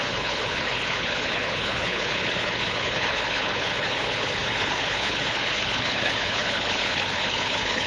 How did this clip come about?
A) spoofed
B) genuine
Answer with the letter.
A